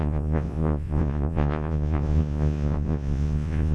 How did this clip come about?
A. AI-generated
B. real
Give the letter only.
A